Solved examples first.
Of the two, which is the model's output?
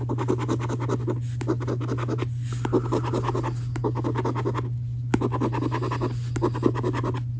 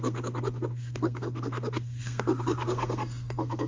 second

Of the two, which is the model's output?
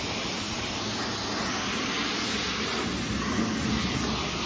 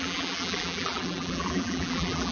second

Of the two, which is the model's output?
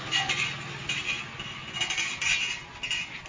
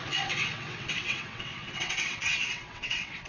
second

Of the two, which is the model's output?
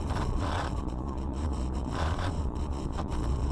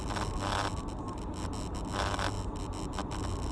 first